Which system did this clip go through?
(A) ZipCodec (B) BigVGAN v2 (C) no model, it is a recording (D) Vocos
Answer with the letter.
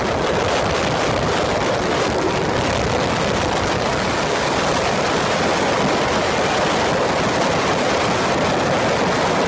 C